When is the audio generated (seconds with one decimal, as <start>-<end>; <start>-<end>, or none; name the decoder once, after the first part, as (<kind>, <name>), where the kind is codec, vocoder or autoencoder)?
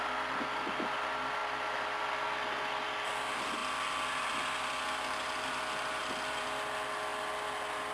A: none